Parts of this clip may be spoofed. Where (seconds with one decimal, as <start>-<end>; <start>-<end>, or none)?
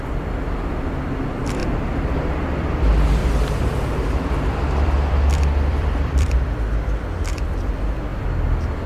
1.6-2.7; 3.2-6.5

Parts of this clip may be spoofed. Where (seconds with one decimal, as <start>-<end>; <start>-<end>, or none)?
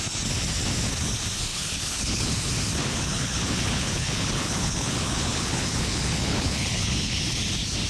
1.5-2.5; 2.9-7.2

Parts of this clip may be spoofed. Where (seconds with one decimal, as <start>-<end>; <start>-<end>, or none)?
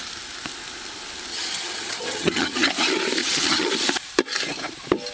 1.3-2.7; 3.2-3.7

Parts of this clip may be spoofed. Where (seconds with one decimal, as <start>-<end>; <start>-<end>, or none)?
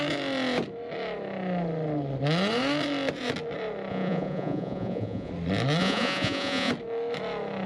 3.9-5.3; 5.8-6.7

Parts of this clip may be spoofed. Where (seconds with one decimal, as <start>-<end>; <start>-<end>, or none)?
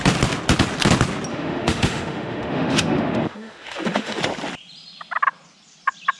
1.3-4.2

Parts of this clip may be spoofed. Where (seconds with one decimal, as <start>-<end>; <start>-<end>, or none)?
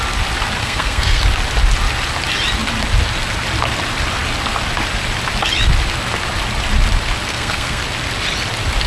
0.6-1.2; 7.3-7.8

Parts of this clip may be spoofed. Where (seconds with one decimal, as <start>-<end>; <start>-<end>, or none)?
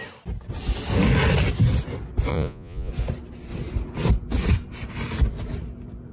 2.3-2.9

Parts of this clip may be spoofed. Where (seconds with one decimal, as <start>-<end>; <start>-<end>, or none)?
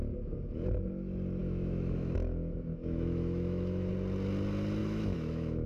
1.4-3.9; 4.8-5.7